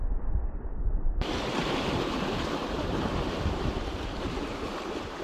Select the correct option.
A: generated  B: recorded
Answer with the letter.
A